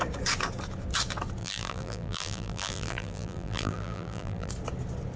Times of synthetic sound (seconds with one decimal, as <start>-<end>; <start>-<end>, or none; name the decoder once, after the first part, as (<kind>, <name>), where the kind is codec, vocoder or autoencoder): 1.4-4.5 (vocoder, BigVGAN v2)